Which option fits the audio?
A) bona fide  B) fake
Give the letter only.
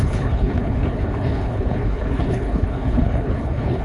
B